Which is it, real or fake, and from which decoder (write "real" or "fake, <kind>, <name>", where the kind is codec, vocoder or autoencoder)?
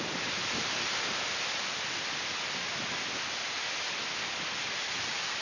real